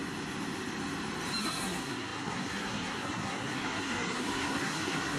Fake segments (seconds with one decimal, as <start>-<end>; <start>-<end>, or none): 1.4-5.2